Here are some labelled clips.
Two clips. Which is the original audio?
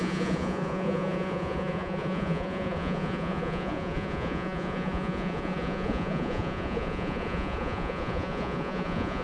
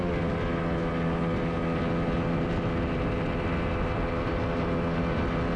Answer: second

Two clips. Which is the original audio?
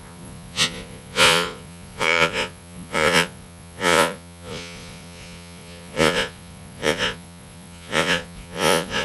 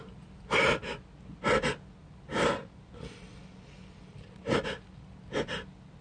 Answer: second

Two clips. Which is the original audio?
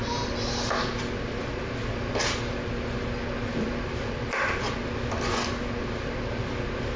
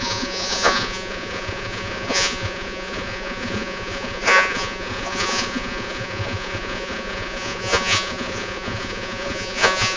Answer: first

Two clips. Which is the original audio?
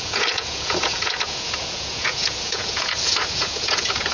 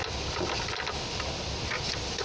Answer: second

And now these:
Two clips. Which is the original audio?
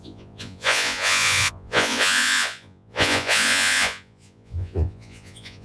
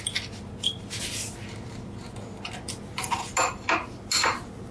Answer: second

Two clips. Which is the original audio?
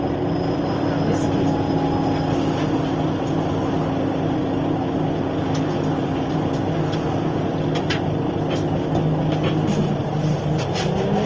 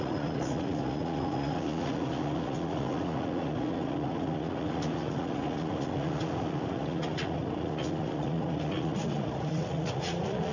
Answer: first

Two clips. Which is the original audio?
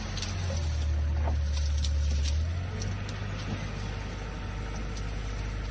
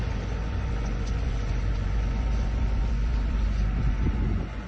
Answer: first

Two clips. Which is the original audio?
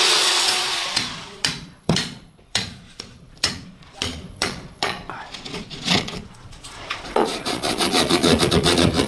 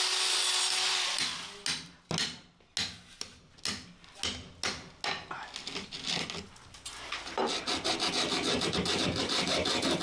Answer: second